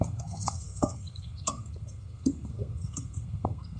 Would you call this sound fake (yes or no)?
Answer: yes